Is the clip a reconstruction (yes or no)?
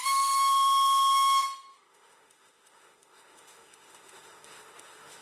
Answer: yes